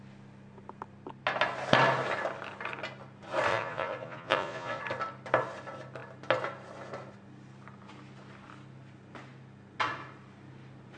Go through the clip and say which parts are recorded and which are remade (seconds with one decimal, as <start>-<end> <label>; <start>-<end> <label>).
0.0-3.5 recorded; 3.5-4.8 remade; 4.8-11.0 recorded